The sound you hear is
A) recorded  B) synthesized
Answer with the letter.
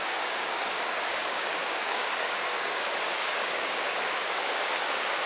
B